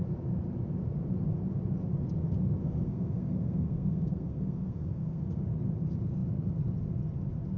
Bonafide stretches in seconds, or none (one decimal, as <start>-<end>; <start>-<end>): 0.0-2.6; 5.4-7.6